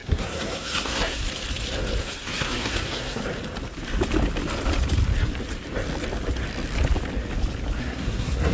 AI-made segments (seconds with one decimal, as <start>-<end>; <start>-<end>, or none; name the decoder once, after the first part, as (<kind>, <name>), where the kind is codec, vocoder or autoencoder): 0.0-1.2 (codec, SNAC); 2.0-3.2; 7.8-8.5